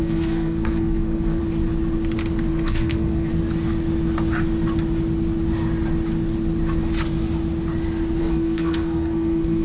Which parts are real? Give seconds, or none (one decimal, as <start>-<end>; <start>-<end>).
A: 1.4-2.5; 3.3-8.2

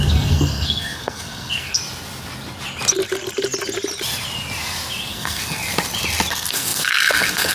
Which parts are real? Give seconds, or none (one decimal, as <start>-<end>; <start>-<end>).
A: 1.8-5.1; 5.6-6.3